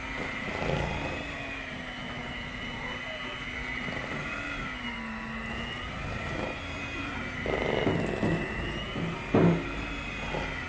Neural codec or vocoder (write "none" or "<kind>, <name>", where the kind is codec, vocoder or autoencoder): none